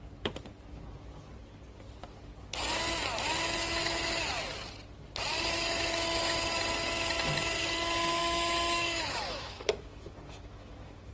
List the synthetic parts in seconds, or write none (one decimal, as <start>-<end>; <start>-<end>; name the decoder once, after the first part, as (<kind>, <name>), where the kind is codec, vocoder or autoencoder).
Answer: 3.8-4.3 (autoencoder, DAC-VAE); 8.2-11.1

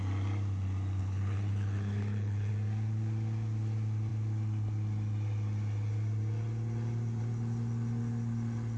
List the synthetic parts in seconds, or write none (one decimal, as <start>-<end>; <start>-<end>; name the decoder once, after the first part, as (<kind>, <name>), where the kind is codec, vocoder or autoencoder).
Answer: 1.0-2.5 (codec, HILCodec)

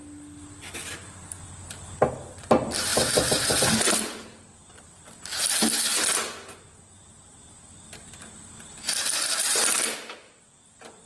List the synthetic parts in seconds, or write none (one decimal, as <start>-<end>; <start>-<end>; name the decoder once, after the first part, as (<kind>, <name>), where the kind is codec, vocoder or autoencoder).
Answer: 2.9-5.0 (vocoder, BigVGAN v2)

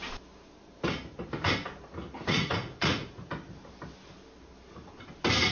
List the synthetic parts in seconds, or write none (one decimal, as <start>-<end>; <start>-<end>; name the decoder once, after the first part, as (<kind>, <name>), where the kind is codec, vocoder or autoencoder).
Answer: 2.3-3.3 (vocoder, Vocos)

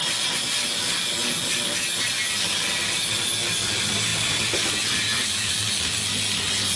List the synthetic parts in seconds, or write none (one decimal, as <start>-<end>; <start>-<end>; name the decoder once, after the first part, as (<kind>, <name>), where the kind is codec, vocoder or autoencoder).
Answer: 4.1-5.7 (vocoder, BigVGAN v2)